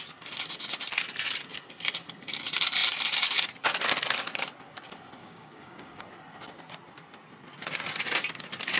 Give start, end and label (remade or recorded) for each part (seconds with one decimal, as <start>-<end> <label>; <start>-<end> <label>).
0.0-5.2 recorded; 5.2-6.0 remade; 6.0-8.8 recorded